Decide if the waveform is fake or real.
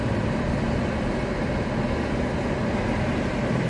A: real